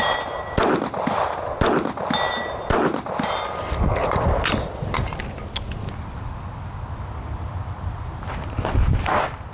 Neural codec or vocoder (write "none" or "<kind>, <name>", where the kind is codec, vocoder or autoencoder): none